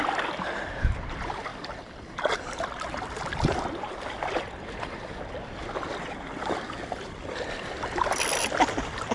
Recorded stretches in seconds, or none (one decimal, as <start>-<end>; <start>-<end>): 0.0-9.1